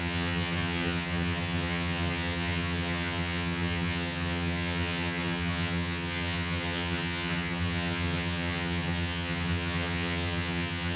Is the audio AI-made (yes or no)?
yes